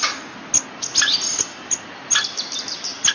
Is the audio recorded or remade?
recorded